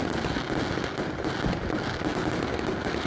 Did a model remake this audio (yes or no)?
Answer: no